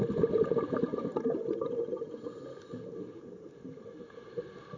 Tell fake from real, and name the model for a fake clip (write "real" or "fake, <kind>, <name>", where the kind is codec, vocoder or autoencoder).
real